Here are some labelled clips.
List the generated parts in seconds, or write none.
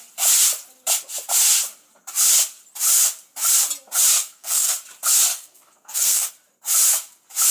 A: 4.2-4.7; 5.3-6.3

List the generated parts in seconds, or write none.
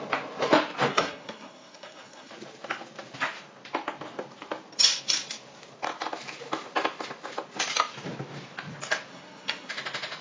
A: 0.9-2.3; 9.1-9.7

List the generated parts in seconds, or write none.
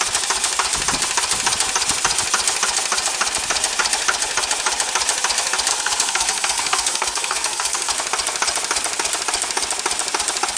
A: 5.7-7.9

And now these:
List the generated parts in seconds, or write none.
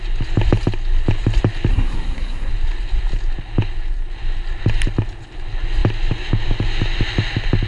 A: 1.7-2.5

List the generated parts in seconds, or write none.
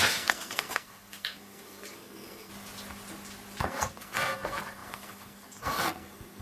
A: 0.0-2.5; 3.6-6.4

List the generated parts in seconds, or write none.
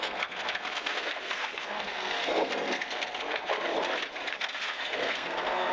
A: 0.0-3.7; 4.3-5.7